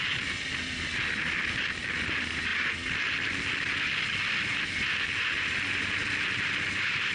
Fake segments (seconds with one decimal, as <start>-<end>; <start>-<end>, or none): none